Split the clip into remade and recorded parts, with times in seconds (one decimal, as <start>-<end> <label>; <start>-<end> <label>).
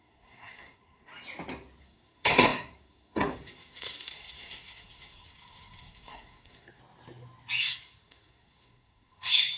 0.0-1.1 remade; 1.1-1.8 recorded; 1.8-6.8 remade; 6.8-7.6 recorded; 7.6-9.6 remade